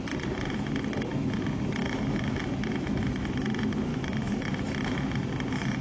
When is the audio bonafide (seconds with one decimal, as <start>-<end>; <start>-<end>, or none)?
0.0-1.8; 2.4-3.9; 4.5-5.8